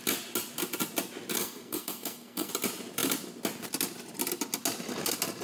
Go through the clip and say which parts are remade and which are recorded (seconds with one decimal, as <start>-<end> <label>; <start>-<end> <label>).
0.0-1.4 recorded; 1.4-2.5 remade; 2.5-5.4 recorded